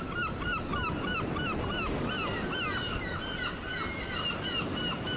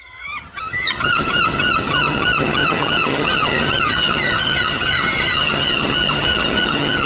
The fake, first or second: second